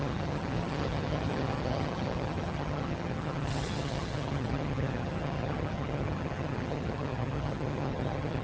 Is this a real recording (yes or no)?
no